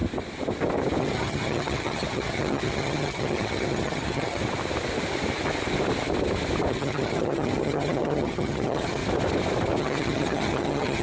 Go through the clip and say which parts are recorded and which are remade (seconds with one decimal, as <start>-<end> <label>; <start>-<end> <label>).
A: 0.0-1.0 recorded; 1.0-4.4 remade; 4.4-6.7 recorded; 6.7-9.0 remade; 9.0-9.8 recorded; 9.8-11.0 remade